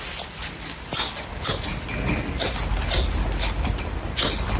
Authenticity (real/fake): real